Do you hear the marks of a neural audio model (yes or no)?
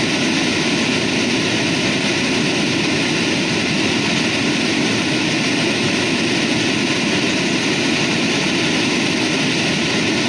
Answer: no